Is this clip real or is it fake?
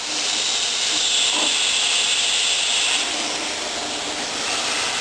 real